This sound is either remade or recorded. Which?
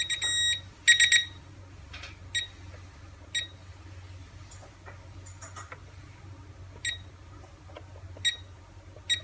recorded